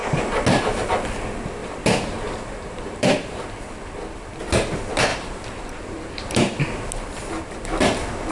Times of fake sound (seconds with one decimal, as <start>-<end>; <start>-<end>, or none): 1.6-3.4; 5.1-6.6